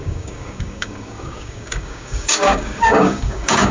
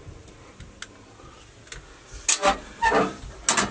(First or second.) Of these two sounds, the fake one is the first